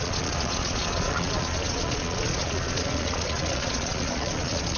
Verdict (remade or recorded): remade